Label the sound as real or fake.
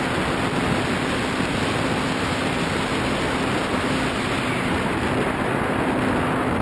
real